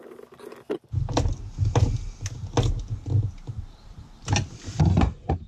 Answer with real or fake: real